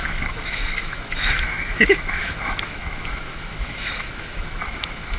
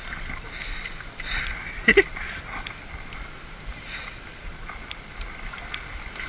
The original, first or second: second